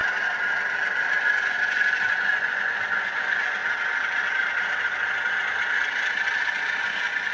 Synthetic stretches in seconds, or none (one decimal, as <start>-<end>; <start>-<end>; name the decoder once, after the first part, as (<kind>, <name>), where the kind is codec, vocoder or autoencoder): 1.2-3.6 (vocoder, Vocos); 6.8-7.3